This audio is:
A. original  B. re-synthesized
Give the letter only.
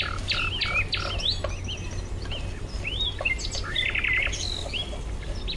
A